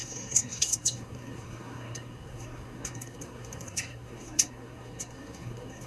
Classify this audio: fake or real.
fake